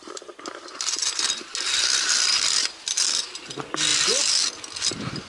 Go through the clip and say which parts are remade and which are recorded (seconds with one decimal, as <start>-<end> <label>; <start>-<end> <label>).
0.0-5.3 recorded